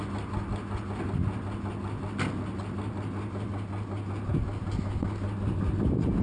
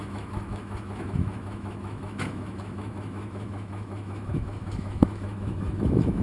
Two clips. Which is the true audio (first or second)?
first